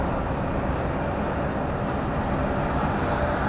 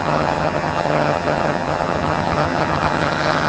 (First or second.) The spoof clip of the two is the second